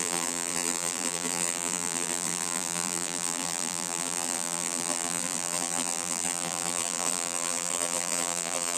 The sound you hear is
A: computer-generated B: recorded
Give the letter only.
A